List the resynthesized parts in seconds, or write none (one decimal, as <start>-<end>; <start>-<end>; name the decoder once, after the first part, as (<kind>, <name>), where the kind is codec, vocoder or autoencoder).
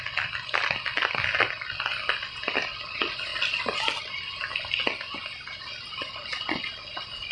3.3-4.0 (vocoder, BigVGAN v2)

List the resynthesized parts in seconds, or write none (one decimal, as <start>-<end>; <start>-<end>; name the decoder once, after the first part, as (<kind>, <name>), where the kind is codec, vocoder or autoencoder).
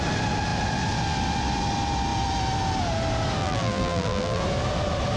3.4-4.4 (vocoder, BigVGAN v2)